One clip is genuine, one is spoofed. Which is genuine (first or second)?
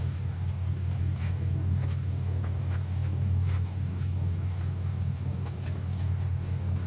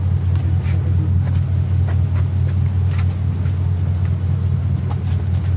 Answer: second